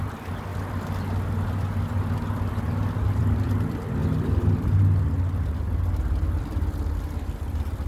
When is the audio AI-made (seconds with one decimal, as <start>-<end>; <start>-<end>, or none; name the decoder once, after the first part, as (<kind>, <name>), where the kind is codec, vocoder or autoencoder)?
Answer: 0.0-4.0 (vocoder, BigVGAN v2); 6.4-7.9